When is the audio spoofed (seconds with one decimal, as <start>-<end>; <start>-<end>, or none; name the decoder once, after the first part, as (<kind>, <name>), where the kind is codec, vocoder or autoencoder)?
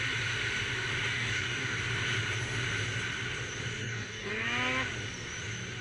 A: 1.1-1.8 (codec, DAC); 3.8-4.3